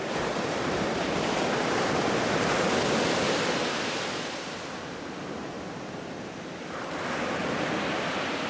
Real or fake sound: fake